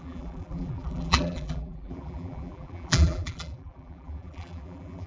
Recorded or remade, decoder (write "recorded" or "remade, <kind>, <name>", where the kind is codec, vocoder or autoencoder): remade, vocoder, BigVGAN v2